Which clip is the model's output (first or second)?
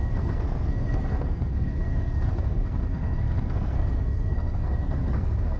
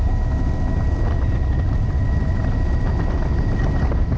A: first